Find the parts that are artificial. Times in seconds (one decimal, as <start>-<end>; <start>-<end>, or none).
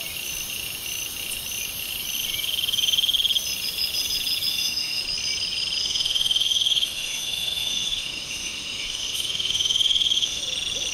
4.5-5.0; 5.8-10.4